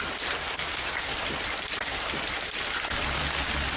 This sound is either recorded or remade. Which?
recorded